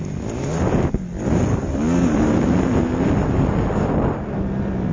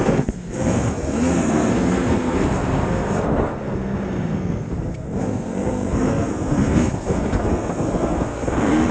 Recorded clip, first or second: first